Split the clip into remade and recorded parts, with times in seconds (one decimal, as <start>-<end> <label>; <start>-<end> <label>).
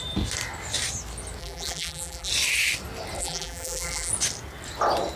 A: 0.0-1.4 recorded; 1.4-2.3 remade; 2.3-3.2 recorded; 3.2-4.1 remade; 4.1-5.2 recorded